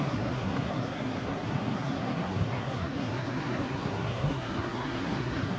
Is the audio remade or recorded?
remade